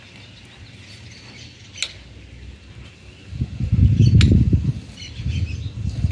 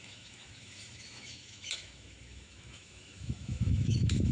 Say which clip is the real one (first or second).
first